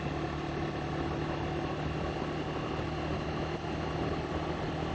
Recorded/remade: recorded